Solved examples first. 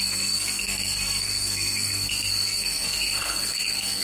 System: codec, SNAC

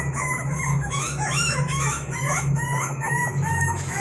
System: autoencoder, DAC-VAE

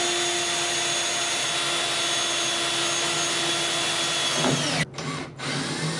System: none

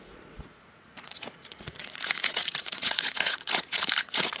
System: vocoder, Vocos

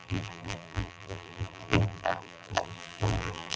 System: vocoder, BigVGAN v2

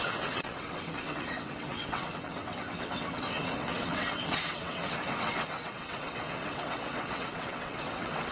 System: vocoder, WaveNeXt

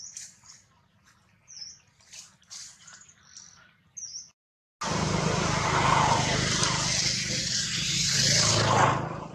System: none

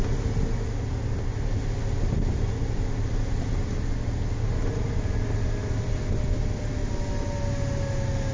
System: none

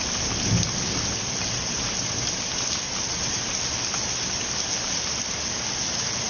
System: none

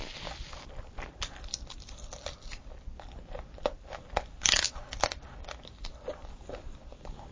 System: none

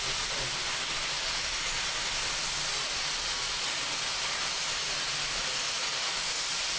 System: none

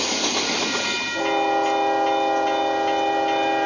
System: none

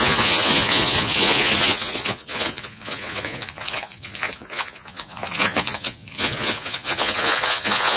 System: vocoder, Vocos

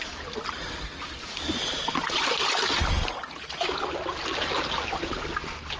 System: none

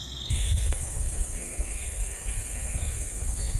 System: codec, SNAC